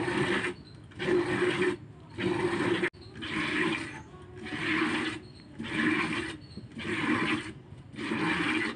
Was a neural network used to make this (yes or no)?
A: no